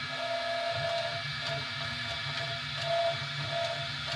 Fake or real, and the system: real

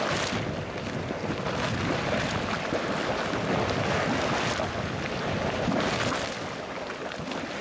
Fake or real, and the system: real